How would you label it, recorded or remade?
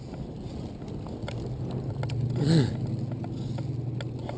recorded